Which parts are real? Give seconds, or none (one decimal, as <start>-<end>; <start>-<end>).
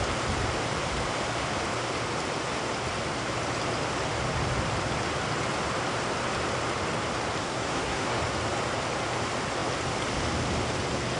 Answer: 0.0-7.4; 8.2-11.2